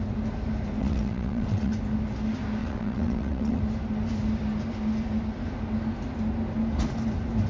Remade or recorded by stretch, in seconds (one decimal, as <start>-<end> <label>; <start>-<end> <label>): 0.0-0.8 recorded; 0.8-1.7 remade; 1.7-2.6 recorded; 2.6-3.6 remade; 3.6-7.5 recorded